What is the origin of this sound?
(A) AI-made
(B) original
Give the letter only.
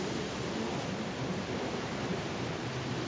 B